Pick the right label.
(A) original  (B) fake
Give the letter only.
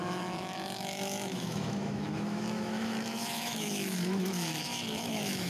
B